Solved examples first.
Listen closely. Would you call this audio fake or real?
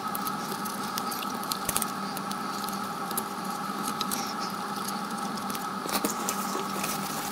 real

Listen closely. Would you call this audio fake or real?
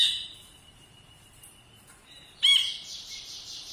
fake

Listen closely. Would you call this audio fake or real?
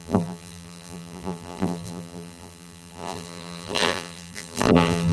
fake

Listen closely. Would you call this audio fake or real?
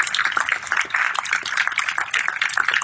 fake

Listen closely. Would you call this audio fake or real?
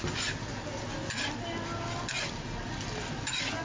real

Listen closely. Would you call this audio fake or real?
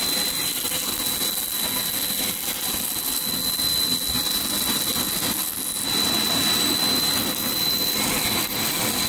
real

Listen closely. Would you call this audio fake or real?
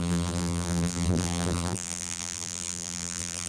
fake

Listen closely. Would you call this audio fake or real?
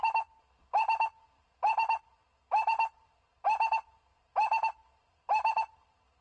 real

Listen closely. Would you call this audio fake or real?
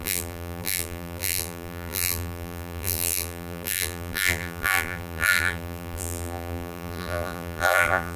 fake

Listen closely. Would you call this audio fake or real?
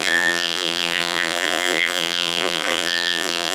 fake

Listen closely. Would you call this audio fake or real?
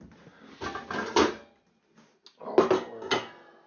real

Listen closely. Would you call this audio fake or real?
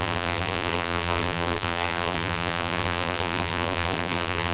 fake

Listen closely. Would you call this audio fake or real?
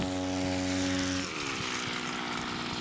real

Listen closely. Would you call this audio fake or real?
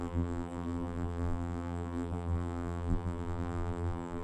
fake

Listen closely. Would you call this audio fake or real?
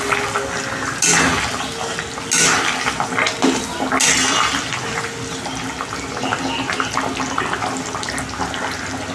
real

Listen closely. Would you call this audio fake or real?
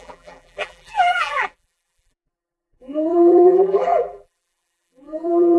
fake